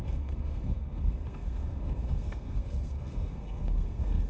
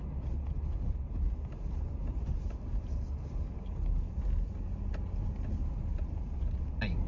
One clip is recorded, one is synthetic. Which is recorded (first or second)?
second